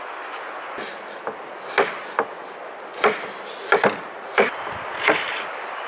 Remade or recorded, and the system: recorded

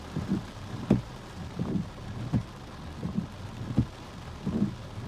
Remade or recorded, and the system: recorded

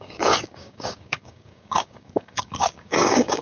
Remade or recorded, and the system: remade, codec, DAC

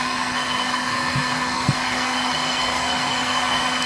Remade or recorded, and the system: remade, codec, SNAC